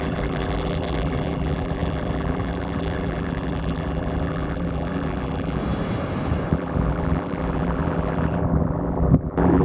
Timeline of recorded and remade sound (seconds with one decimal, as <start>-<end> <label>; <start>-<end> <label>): 0.0-5.6 remade; 5.6-6.5 recorded; 6.5-9.6 remade